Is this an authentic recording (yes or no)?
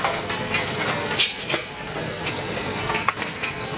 no